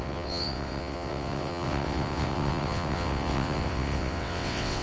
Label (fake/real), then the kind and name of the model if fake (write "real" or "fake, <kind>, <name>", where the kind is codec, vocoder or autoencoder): fake, vocoder, WaveNeXt